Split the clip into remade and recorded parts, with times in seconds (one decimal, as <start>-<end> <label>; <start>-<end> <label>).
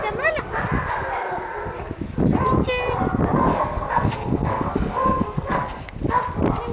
0.0-3.5 recorded; 3.5-5.9 remade; 5.9-6.7 recorded